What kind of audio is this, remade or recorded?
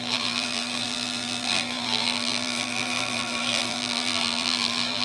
remade